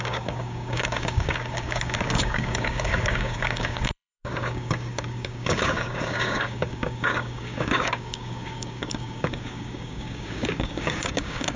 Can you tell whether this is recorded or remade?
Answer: remade